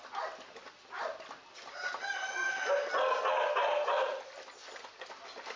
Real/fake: real